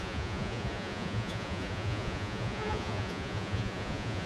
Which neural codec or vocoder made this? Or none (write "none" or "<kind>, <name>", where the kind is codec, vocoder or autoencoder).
vocoder, Vocos